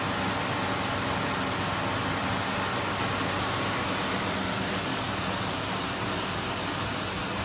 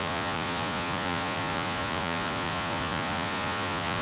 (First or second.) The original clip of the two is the first